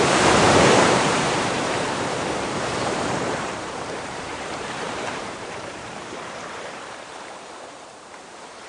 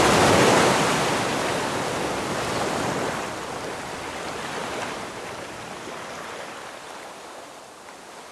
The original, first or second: second